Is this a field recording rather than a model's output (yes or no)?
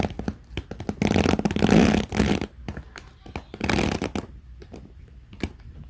yes